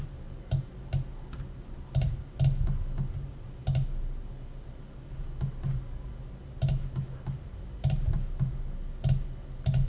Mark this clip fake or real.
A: real